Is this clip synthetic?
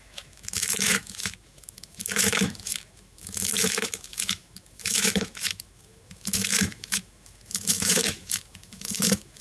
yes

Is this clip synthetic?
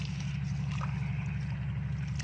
no